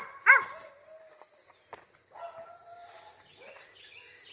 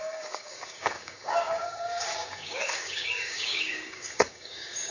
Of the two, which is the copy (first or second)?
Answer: second